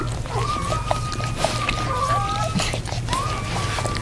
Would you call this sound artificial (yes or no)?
no